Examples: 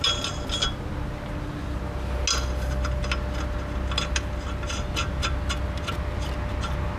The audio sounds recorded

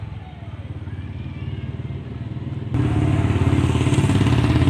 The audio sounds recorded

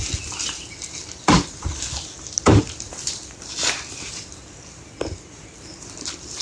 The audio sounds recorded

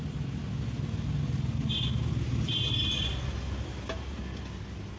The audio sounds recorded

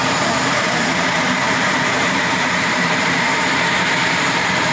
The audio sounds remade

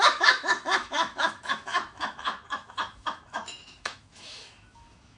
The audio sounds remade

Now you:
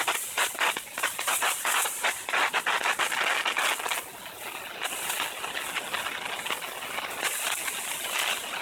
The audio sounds recorded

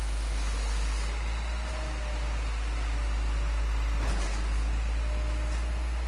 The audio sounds recorded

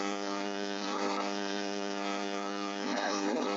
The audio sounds remade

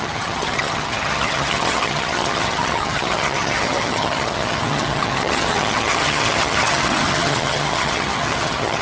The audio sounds remade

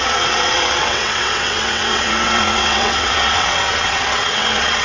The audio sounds remade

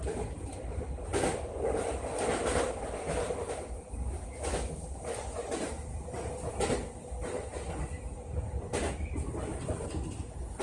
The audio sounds recorded